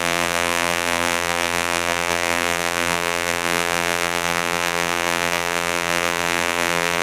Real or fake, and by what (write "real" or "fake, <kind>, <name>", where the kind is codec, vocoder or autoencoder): fake, vocoder, BigVGAN v2